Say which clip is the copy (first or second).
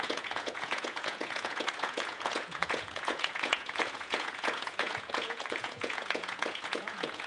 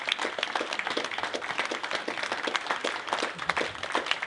first